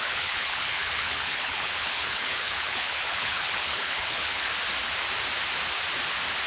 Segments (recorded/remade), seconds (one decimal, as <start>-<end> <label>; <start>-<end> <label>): 0.0-4.5 remade; 4.5-6.5 recorded